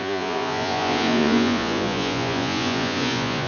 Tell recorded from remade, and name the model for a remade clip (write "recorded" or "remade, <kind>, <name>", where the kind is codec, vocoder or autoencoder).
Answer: remade, vocoder, Vocos